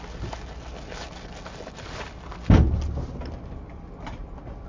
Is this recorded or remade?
recorded